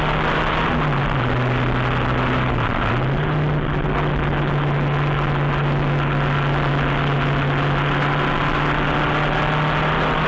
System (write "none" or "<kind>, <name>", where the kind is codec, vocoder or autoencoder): none